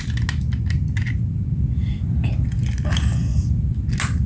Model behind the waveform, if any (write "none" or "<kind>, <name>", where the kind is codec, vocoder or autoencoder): none